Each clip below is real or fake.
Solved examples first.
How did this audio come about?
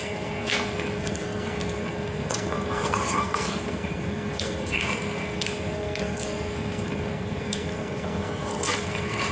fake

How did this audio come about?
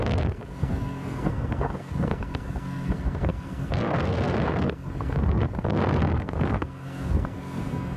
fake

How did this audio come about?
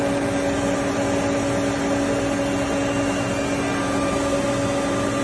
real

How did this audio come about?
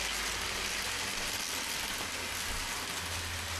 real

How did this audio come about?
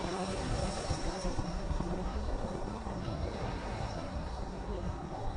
fake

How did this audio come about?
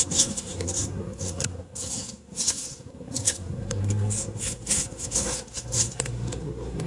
fake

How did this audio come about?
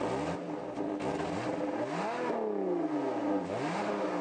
real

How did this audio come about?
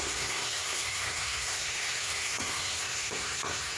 fake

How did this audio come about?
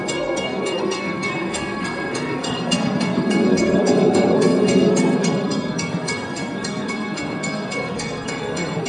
fake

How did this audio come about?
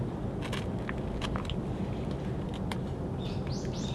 real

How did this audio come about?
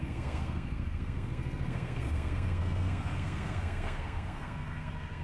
fake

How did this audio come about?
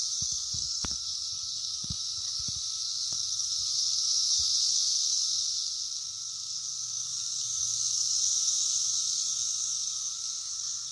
fake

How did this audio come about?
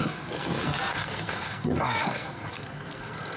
fake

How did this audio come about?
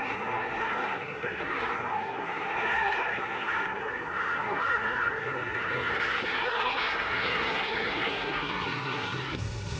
fake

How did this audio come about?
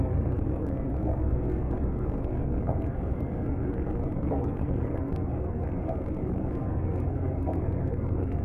fake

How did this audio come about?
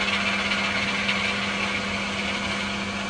real